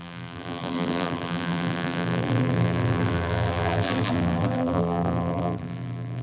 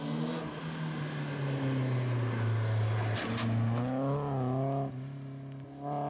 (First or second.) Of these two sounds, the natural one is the second